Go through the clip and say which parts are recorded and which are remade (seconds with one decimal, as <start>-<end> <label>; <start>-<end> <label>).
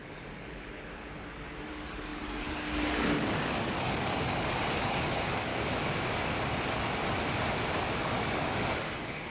0.0-5.5 remade; 5.5-8.0 recorded; 8.0-9.3 remade